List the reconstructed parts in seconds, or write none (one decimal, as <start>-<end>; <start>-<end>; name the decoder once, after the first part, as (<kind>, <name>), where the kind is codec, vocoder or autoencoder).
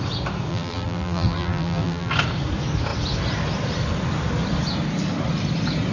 0.5-2.1 (vocoder, BigVGAN v2)